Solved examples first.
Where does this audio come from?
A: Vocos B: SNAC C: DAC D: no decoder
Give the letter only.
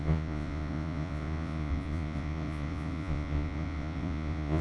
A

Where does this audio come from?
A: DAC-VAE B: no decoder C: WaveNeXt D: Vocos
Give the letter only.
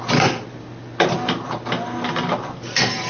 B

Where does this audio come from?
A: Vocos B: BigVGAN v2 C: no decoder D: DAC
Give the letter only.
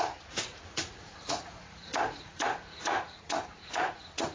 A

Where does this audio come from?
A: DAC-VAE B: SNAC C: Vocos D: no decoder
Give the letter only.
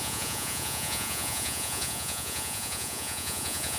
C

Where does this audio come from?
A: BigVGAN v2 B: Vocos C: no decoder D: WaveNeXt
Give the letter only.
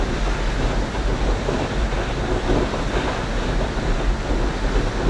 C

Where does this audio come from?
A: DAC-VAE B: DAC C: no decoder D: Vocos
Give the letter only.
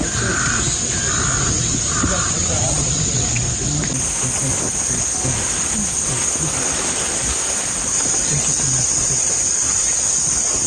C